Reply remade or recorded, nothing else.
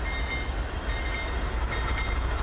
recorded